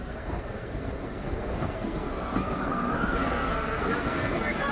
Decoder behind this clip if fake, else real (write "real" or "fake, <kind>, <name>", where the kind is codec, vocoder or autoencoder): fake, codec, SNAC